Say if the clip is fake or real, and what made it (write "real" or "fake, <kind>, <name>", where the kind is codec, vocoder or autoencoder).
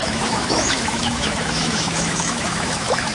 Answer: fake, autoencoder, DAC-VAE